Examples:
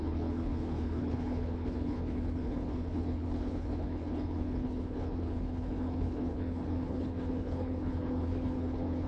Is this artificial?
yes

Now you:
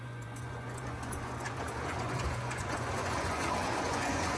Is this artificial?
yes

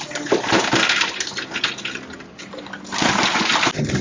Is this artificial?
no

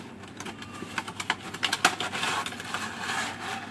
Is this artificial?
no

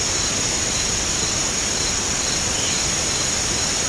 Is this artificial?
no